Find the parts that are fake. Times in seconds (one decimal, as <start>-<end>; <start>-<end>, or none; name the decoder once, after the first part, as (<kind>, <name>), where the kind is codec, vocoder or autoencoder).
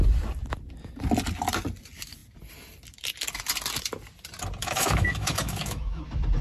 4.6-6.0 (autoencoder, DAC-VAE)